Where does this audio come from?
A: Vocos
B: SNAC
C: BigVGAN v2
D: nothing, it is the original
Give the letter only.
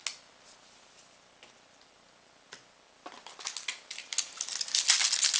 D